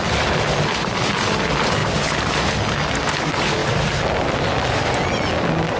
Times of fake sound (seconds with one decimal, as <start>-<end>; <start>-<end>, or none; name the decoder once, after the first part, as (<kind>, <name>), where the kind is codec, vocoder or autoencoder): none